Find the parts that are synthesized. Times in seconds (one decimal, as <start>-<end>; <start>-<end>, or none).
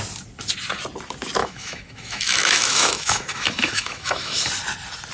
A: 1.4-4.5